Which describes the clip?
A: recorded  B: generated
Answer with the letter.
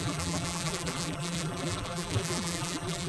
B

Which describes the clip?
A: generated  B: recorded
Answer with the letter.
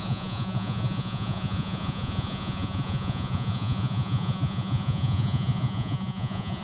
A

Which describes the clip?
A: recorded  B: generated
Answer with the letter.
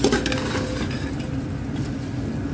A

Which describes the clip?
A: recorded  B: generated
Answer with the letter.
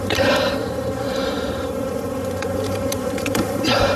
B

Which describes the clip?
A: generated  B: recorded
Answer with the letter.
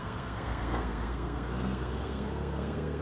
A